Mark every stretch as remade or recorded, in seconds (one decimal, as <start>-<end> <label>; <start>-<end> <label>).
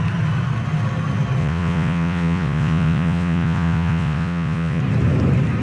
0.0-1.4 recorded; 1.4-4.8 remade; 4.8-5.6 recorded